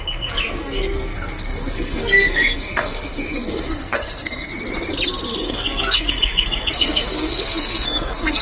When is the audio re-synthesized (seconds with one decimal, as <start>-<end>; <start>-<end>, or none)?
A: 0.0-4.5; 5.4-8.4